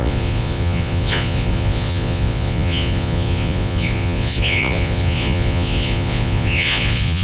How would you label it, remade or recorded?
remade